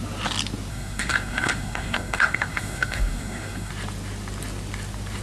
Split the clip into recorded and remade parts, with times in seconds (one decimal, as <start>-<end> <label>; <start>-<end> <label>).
0.0-0.7 recorded; 0.7-3.7 remade; 3.7-5.2 recorded